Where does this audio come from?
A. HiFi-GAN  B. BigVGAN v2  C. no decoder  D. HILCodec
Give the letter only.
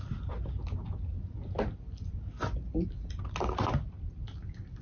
C